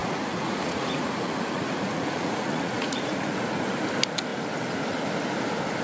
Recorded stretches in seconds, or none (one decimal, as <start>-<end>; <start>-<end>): 3.5-5.8